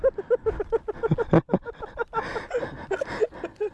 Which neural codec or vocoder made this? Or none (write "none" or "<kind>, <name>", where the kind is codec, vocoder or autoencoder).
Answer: none